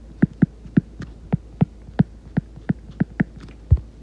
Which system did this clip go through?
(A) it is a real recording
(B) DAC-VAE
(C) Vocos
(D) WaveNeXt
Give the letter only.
A